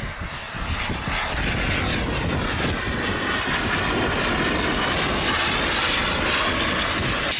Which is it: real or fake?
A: real